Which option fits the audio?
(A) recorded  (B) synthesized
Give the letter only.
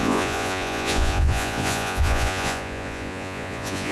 B